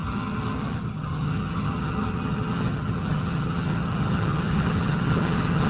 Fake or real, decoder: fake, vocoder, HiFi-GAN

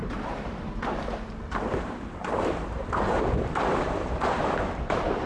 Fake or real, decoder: fake, vocoder, BigVGAN v2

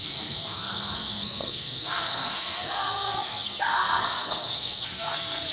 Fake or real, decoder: fake, codec, SNAC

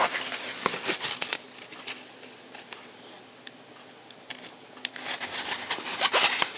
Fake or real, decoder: real